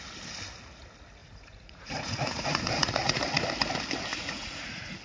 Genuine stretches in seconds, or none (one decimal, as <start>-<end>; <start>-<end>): 0.0-1.2; 3.4-4.1